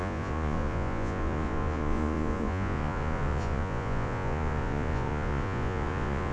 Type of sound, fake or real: fake